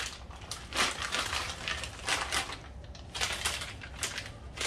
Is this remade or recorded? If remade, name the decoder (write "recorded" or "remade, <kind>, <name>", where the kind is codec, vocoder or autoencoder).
recorded